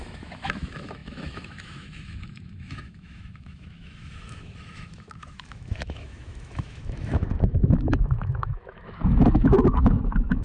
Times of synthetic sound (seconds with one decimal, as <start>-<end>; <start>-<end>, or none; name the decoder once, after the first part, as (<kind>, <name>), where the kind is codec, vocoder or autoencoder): 0.0-10.4 (autoencoder, DAC-VAE)

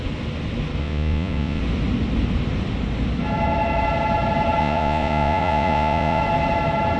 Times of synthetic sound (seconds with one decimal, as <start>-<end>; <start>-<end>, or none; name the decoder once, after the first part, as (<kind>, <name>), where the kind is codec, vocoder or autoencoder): 0.8-1.6 (vocoder, Vocos); 4.6-6.2

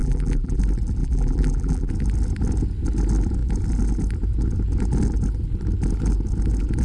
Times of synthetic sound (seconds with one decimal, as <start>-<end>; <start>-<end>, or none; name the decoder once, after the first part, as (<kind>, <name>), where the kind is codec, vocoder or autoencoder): 0.0-0.6 (vocoder, BigVGAN v2); 1.0-1.9

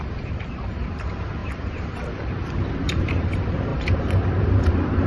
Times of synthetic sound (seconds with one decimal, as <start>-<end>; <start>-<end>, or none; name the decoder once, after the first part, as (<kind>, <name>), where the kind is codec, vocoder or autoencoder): 0.0-5.1 (vocoder, BigVGAN v2)